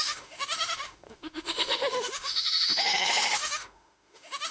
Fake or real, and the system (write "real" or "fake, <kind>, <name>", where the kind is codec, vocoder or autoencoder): fake, autoencoder, DAC-VAE